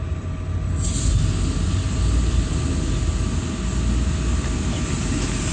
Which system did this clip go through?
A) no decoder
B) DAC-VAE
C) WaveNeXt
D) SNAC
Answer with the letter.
A